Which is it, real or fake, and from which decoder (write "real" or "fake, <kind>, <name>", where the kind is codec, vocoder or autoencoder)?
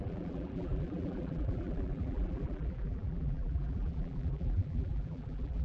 fake, vocoder, BigVGAN v2